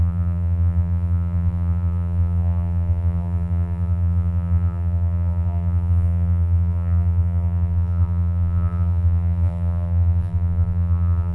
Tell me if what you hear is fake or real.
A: fake